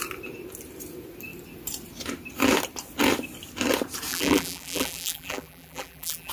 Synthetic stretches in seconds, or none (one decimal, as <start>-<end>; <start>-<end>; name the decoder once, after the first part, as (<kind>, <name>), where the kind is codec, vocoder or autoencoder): 4.1-6.3 (vocoder, BigVGAN v2)

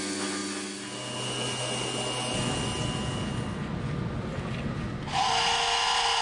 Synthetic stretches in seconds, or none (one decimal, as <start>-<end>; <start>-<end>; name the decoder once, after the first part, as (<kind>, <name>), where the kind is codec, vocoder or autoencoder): none

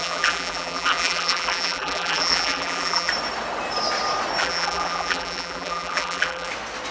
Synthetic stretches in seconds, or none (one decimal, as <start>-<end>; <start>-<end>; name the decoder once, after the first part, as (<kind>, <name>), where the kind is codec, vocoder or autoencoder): 0.0-3.1 (vocoder, BigVGAN v2); 4.4-6.5

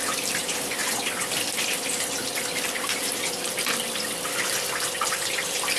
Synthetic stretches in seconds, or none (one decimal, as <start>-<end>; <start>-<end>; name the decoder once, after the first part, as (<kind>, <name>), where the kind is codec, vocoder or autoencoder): 0.0-5.8 (vocoder, BigVGAN v2)

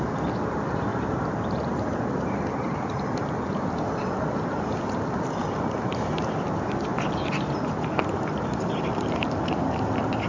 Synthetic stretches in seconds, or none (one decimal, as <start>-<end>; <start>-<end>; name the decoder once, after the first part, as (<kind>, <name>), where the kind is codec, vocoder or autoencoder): 0.9-3.2 (vocoder, BigVGAN v2); 5.4-6.1; 6.9-9.6

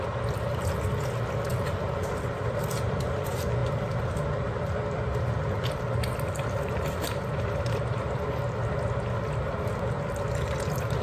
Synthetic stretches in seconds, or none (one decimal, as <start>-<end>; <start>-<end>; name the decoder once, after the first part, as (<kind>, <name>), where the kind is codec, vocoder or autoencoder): 1.5-2.7 (vocoder, BigVGAN v2)

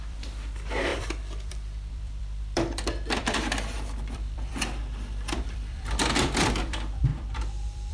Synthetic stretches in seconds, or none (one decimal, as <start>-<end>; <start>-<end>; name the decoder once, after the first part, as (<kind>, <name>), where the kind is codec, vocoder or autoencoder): 0.0-7.9 (vocoder, BigVGAN v2)

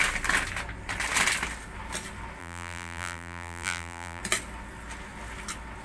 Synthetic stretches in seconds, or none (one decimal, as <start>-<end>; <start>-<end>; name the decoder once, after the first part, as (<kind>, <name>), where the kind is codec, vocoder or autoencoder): 2.4-4.2 (vocoder, BigVGAN v2)